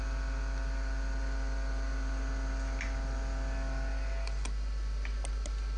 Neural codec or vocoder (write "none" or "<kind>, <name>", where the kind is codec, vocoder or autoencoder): none